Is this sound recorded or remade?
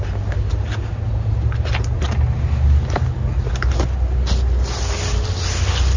recorded